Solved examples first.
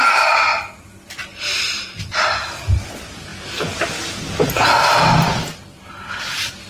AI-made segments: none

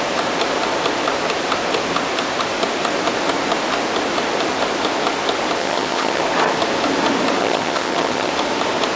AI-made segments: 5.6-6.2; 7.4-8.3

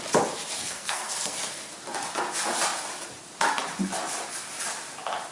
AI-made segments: 0.6-1.7

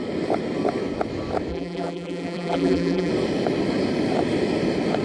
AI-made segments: 1.5-3.1

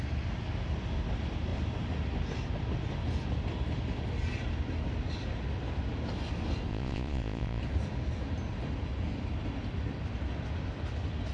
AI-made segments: 6.7-7.6

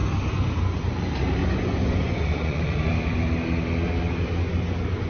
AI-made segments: 1.4-2.8

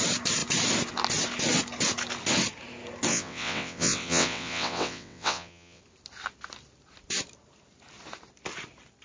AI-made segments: 3.1-5.8